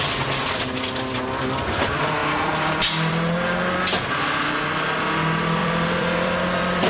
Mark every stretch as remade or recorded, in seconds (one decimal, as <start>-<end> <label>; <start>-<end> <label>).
0.0-5.6 recorded; 5.6-6.9 remade